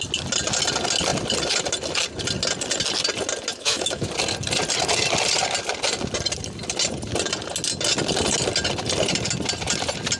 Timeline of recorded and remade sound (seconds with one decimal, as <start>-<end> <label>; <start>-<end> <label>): 0.0-3.5 recorded; 3.5-4.1 remade; 4.1-10.2 recorded